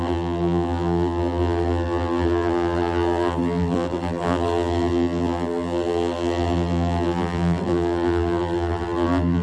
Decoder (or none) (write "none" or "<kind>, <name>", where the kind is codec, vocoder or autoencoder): vocoder, BigVGAN v2